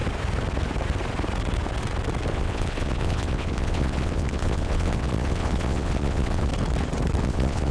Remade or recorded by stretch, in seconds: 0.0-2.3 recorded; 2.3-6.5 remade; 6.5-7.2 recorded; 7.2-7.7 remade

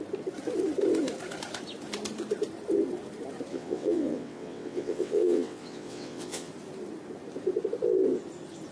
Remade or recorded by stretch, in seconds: 0.0-3.5 recorded; 3.5-6.5 remade; 6.5-8.7 recorded

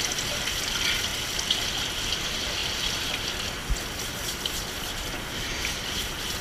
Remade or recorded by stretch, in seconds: 0.0-6.4 recorded

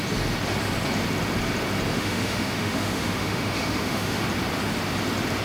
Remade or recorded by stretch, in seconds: 0.0-1.9 recorded; 1.9-4.2 remade; 4.2-5.4 recorded

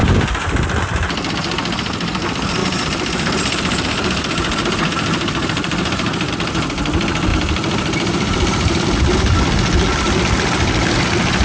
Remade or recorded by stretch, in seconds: 0.0-1.3 remade; 1.3-2.6 recorded; 2.6-6.3 remade; 6.3-7.3 recorded; 7.3-11.0 remade; 11.0-11.4 recorded

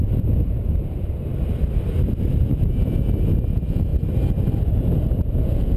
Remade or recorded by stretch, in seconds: 0.0-1.3 remade; 1.3-2.5 recorded; 2.5-3.9 remade; 3.9-4.7 recorded; 4.7-5.8 remade